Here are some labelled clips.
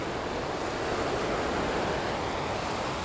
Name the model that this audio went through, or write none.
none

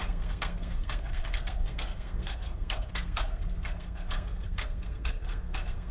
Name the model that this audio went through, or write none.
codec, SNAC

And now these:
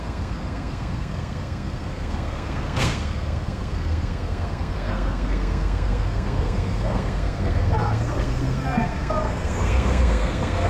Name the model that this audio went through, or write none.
codec, SNAC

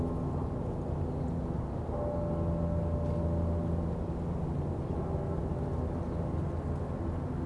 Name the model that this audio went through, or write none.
none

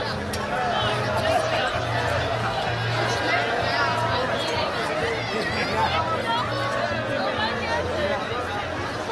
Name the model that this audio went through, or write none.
none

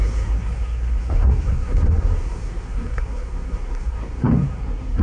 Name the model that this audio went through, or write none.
codec, SNAC